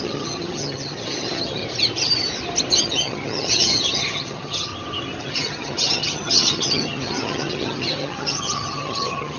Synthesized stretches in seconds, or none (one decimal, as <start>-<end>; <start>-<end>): 0.0-1.6; 2.8-4.7; 5.2-9.4